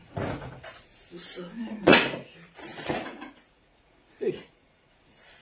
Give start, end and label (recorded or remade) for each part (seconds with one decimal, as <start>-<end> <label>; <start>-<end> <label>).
0.0-0.9 remade; 0.9-1.6 recorded; 1.6-5.4 remade